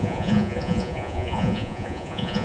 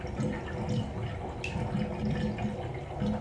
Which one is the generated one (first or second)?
first